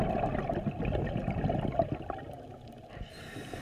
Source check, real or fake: real